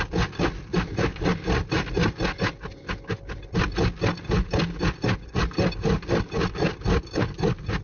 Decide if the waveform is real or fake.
real